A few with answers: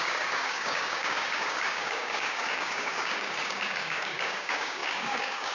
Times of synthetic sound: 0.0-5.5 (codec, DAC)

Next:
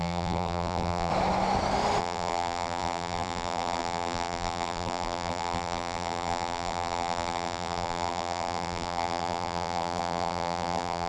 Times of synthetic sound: 0.0-1.1 (vocoder, BigVGAN v2); 2.0-11.1

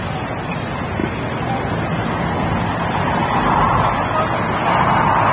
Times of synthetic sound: none

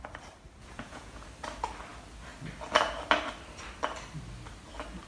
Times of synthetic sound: 0.6-1.2 (vocoder, Vocos)

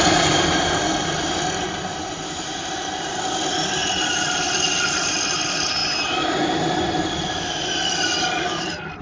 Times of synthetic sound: 0.0-5.8 (vocoder, BigVGAN v2); 6.3-9.0

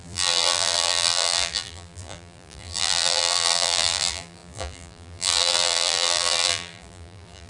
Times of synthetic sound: 0.0-7.5 (vocoder, BigVGAN v2)

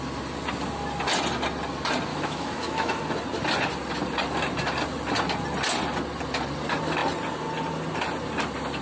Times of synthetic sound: 2.1-3.0 (autoencoder, DAC-VAE)

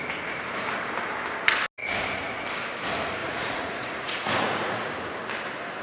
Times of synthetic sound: 1.8-2.3 (vocoder, Vocos); 3.2-4.9